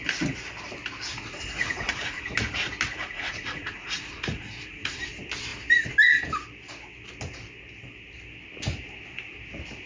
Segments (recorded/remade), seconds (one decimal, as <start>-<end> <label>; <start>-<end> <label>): 0.0-1.1 recorded; 1.1-2.2 remade; 2.2-2.9 recorded; 2.9-5.0 remade; 5.0-9.9 recorded